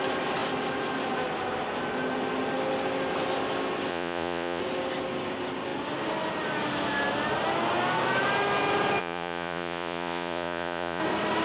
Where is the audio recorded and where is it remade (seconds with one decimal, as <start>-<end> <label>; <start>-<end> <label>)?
0.0-3.9 recorded; 3.9-4.6 remade; 4.6-9.0 recorded; 9.0-11.0 remade; 11.0-11.4 recorded